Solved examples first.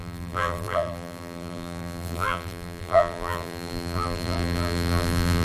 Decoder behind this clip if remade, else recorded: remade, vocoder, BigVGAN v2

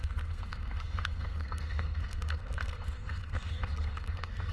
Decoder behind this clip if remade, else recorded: remade, codec, SNAC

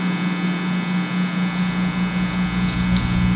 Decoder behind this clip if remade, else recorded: recorded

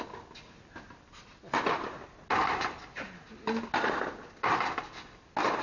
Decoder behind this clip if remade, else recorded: recorded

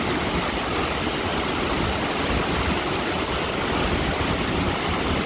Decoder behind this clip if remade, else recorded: recorded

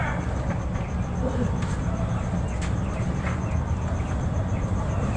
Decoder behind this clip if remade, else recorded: recorded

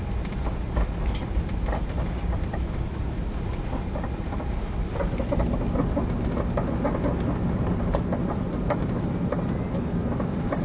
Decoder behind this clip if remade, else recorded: recorded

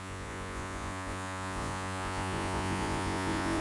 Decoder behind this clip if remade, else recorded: remade, vocoder, Vocos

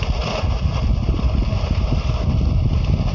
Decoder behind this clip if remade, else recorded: recorded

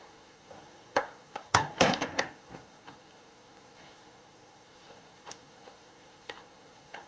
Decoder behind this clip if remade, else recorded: remade, codec, SNAC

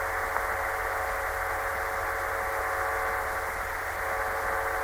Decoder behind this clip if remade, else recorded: recorded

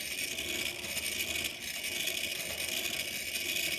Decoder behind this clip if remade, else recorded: recorded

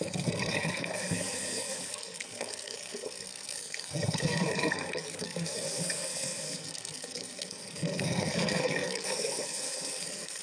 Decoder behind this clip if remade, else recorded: remade, codec, SNAC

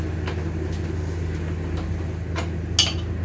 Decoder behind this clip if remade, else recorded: recorded